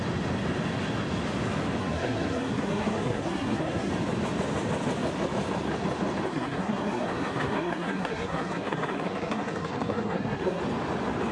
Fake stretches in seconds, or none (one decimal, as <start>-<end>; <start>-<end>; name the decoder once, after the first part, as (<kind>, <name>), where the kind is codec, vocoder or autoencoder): 1.8-3.9 (codec, SNAC); 6.3-10.6